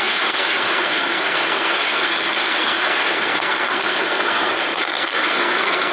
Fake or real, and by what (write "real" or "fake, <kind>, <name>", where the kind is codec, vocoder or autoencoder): fake, codec, SNAC